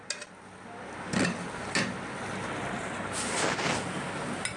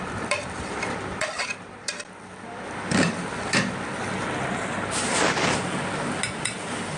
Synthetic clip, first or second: second